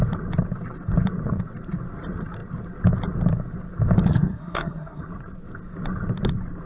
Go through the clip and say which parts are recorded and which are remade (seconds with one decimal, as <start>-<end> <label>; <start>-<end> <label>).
0.0-4.1 recorded; 4.1-5.0 remade; 5.0-6.7 recorded